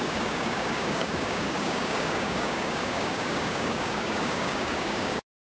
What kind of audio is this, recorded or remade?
remade